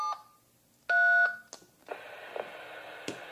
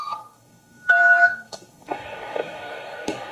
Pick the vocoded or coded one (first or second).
second